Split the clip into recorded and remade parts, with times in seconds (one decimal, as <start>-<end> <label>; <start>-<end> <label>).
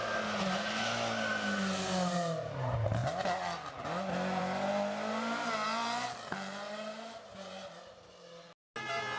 0.0-9.2 recorded